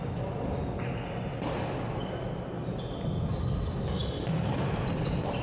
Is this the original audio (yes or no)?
yes